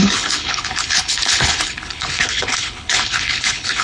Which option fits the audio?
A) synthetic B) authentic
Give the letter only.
A